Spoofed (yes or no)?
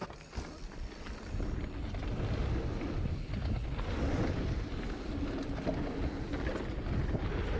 no